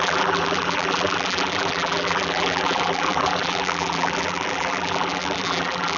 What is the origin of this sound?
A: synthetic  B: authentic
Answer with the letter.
A